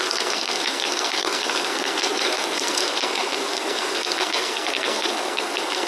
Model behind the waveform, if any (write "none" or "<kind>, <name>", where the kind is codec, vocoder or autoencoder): codec, SNAC